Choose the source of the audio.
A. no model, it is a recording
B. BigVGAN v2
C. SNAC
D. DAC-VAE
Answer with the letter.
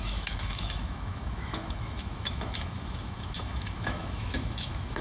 D